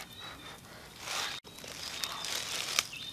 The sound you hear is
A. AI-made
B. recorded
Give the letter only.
B